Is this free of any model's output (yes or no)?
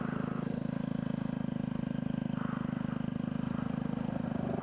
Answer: yes